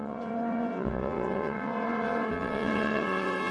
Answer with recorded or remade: remade